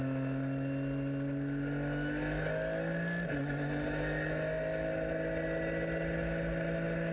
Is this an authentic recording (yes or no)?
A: yes